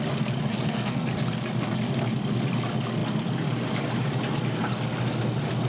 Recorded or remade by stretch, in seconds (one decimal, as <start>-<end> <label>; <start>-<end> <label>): 0.0-0.5 recorded; 0.5-1.1 remade; 1.1-5.7 recorded